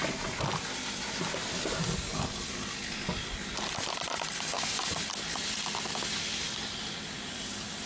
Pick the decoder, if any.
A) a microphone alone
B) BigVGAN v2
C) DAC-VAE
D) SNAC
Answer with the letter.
A